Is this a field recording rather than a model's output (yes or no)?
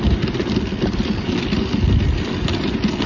yes